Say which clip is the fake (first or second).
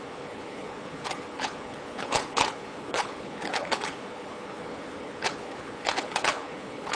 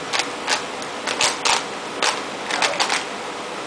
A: first